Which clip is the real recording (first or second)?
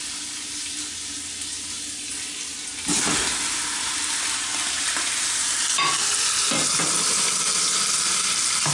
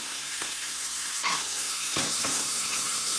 first